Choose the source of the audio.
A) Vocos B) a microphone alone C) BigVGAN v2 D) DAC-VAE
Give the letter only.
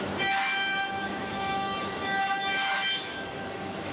D